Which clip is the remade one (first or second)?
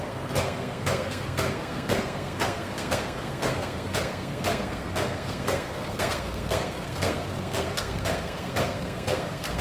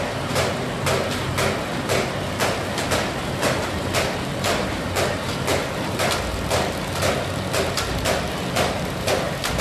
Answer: first